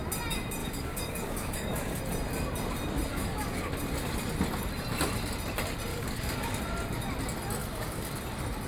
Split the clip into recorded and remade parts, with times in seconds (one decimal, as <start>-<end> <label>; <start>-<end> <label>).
0.0-0.6 recorded; 0.6-2.0 remade; 2.0-3.1 recorded; 3.1-3.7 remade; 3.7-5.9 recorded; 5.9-6.6 remade; 6.6-7.6 recorded; 7.6-8.2 remade; 8.2-8.7 recorded